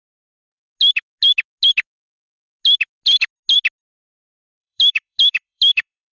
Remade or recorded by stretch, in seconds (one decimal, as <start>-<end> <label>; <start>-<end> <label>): 0.0-0.6 remade; 0.6-4.3 recorded; 4.3-6.1 remade